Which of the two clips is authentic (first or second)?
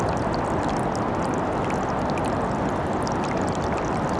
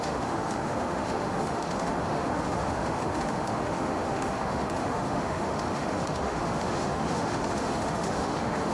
first